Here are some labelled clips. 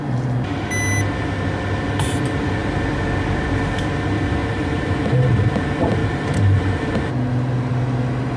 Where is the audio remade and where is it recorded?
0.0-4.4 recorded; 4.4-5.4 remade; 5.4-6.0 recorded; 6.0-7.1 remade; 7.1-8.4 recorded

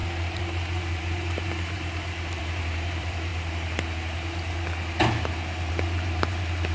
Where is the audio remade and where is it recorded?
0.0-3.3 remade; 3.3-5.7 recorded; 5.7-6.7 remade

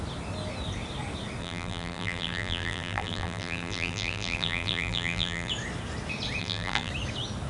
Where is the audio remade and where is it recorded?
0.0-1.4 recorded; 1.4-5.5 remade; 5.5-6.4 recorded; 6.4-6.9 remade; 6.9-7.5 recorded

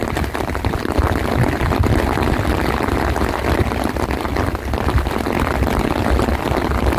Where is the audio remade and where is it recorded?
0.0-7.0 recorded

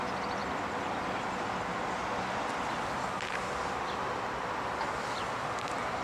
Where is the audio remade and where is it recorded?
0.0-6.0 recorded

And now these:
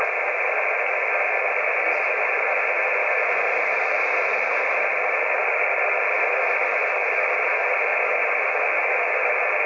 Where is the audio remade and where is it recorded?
0.0-9.7 recorded